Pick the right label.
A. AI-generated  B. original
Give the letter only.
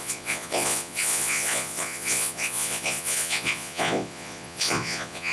A